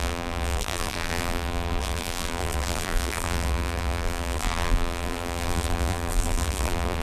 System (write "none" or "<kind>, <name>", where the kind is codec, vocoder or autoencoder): vocoder, BigVGAN v2